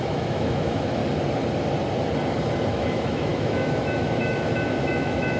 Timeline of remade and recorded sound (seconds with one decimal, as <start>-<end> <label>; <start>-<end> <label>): 0.0-1.0 remade; 1.0-2.7 recorded; 2.7-5.4 remade